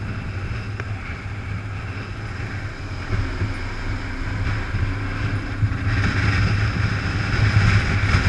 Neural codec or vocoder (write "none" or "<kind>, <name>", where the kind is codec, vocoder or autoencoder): none